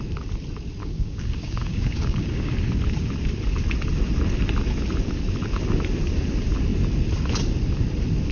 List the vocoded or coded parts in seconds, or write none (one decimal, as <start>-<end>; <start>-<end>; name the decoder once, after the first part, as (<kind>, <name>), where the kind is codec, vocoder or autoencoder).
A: 0.8-2.5 (codec, DAC)

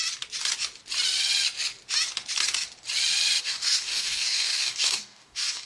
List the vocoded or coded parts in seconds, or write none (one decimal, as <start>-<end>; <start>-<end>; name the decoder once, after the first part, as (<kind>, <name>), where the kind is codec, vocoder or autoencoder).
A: 3.4-5.6 (codec, DAC)

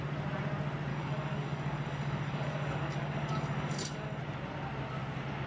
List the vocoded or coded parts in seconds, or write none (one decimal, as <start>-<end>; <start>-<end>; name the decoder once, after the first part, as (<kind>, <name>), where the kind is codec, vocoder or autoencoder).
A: 0.9-4.2 (codec, DAC)

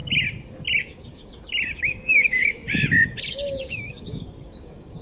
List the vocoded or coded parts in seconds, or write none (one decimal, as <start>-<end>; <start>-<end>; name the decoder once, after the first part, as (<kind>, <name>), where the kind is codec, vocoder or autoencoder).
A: 0.8-1.3 (codec, DAC); 1.8-2.6; 3.3-5.0

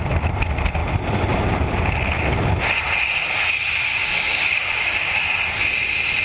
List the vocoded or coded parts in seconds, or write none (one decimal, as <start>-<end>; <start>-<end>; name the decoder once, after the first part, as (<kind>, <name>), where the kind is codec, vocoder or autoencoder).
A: 3.9-5.2 (codec, DAC)

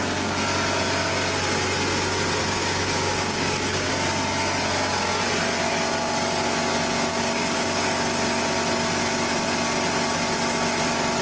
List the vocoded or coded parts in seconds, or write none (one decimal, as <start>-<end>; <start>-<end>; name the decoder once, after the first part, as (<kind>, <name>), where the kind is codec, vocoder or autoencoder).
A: 2.4-3.9 (codec, DAC); 7.1-7.9